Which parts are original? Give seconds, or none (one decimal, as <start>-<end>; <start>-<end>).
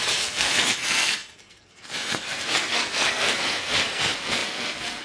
none